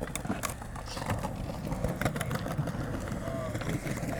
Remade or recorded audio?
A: recorded